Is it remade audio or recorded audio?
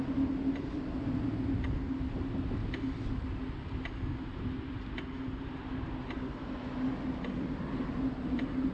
recorded